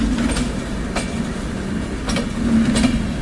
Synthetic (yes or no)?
no